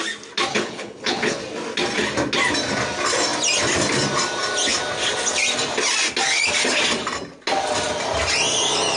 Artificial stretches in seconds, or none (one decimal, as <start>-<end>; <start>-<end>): 0.5-1.4